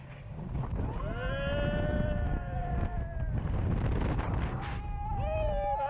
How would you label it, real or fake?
real